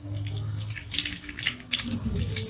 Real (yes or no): no